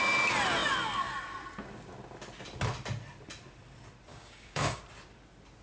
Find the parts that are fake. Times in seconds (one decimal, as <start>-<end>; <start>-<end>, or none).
4.1-4.8